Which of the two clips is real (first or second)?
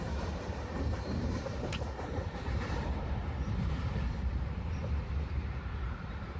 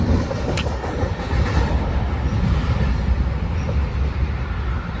second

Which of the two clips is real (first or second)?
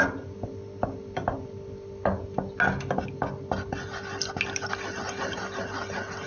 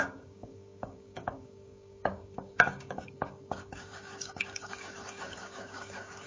first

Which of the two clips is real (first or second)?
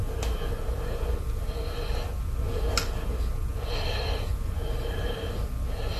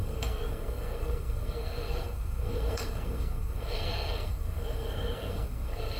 first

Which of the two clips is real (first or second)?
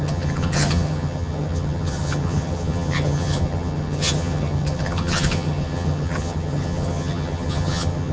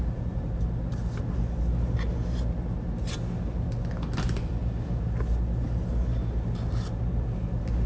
second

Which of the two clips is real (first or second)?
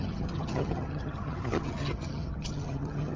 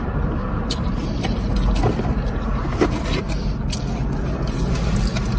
second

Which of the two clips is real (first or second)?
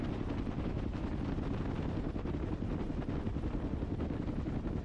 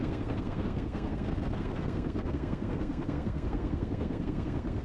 first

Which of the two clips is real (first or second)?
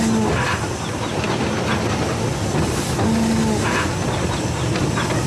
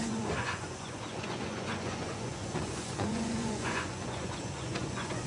first